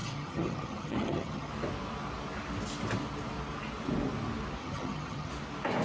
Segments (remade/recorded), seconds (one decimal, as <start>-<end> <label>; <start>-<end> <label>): 0.0-1.5 remade; 1.5-4.6 recorded; 4.6-5.3 remade; 5.3-5.8 recorded